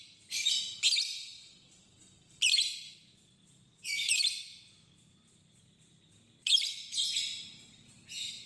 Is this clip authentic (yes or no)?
yes